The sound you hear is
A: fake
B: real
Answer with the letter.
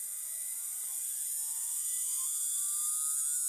B